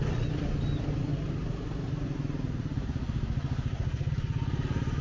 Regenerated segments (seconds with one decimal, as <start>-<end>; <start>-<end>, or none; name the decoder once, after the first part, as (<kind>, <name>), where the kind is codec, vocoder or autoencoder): none